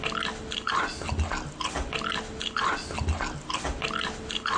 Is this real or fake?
real